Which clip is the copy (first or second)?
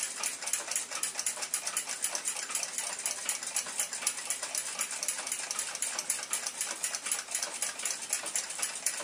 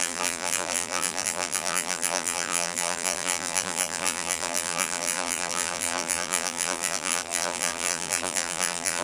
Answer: second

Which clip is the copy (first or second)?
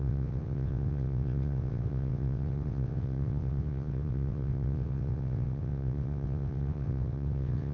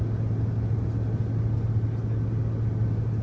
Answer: first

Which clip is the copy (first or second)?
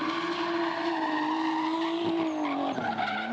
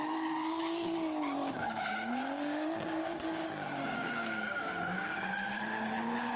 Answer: second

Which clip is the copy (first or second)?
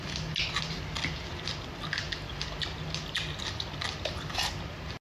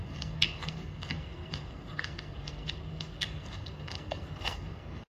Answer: second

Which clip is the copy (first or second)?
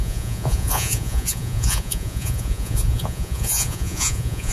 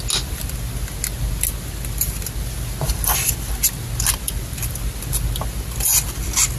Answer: first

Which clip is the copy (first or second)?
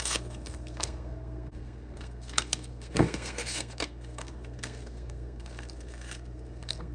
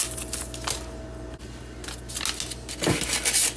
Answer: first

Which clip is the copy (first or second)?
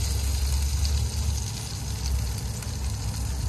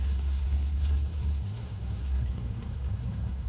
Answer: second